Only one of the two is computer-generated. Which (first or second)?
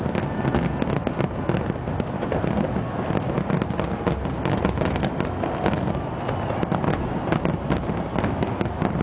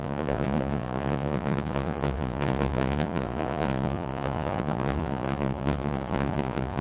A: second